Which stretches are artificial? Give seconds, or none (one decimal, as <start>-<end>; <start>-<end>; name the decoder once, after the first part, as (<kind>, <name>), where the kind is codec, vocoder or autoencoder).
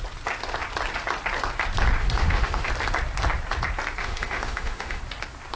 2.0-2.7 (autoencoder, DAC-VAE); 4.0-5.0